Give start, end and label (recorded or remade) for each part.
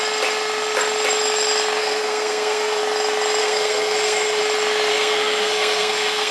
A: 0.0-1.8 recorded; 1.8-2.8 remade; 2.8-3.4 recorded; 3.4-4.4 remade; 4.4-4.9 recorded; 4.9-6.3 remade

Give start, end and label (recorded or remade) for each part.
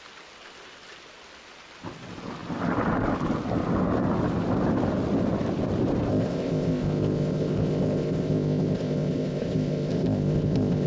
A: 0.0-6.1 recorded; 6.1-10.9 remade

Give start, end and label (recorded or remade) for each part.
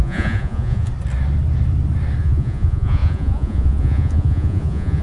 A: 0.0-0.9 remade; 0.9-2.2 recorded; 2.2-5.0 remade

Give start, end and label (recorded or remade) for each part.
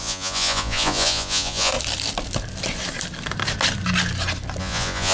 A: 0.0-1.7 remade; 1.7-4.6 recorded; 4.6-5.1 remade